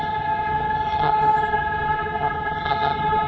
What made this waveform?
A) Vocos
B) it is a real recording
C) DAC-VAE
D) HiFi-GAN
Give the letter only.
D